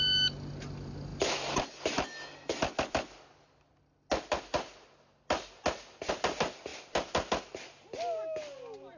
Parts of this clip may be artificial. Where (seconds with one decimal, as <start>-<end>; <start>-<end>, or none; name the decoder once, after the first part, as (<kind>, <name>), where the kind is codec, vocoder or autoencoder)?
none